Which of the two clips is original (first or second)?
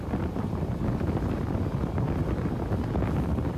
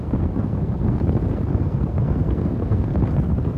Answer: first